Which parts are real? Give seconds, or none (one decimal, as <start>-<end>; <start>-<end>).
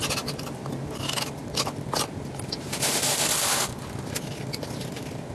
0.0-5.3